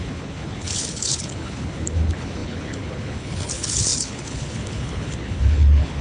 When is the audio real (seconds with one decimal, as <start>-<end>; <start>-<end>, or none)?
none